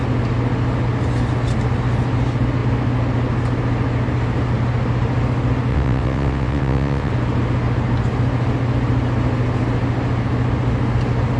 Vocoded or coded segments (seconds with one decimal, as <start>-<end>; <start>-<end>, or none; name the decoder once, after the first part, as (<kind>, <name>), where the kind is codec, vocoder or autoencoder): 5.7-7.1 (vocoder, WaveNeXt)